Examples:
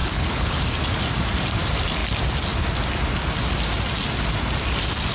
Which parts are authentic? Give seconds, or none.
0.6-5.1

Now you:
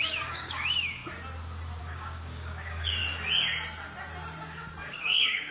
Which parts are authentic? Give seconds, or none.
1.0-1.8; 3.0-4.9

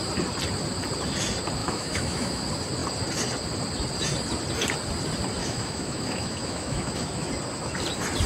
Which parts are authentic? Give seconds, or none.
0.0-1.6; 2.4-5.4; 7.3-8.3

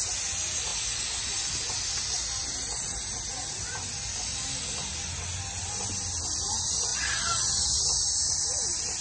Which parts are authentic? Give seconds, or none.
0.0-9.0

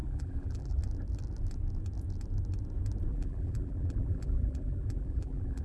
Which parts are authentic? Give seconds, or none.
0.8-3.1

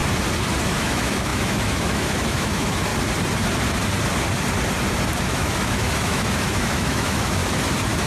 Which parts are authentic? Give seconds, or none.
0.0-0.6; 2.9-5.2; 7.4-8.1

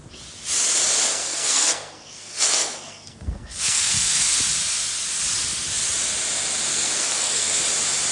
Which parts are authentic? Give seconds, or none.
0.0-1.1; 4.4-6.7; 7.6-8.1